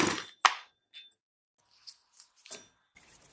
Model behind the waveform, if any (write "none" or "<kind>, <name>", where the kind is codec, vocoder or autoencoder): none